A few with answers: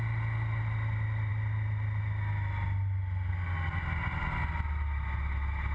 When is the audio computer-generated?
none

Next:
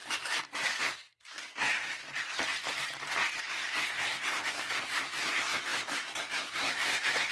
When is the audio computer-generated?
0.8-2.0 (codec, SNAC); 3.4-7.3

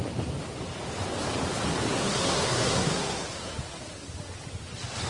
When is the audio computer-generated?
1.9-3.8 (codec, SNAC)

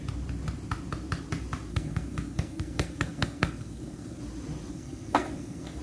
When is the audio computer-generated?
1.7-4.2 (codec, SNAC); 4.7-5.8

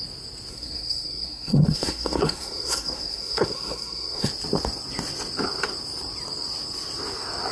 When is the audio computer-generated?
0.5-4.3 (codec, SNAC)

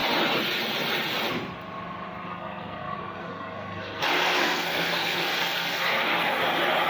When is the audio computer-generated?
2.3-6.4 (codec, SNAC)

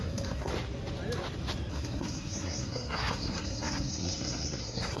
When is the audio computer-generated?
0.0-0.5 (codec, SNAC); 1.7-5.0